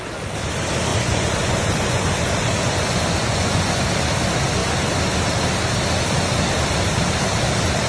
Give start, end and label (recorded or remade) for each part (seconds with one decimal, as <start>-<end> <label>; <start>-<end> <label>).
0.0-0.9 recorded; 0.9-3.8 remade; 3.8-7.9 recorded